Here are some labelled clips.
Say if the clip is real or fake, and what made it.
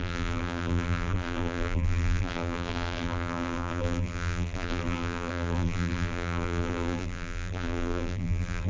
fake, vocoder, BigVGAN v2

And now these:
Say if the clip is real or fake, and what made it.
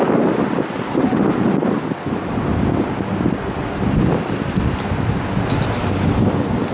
real